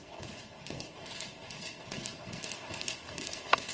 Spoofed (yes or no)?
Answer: yes